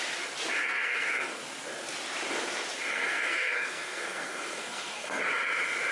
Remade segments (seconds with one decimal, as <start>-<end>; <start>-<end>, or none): 0.6-1.4; 2.9-5.2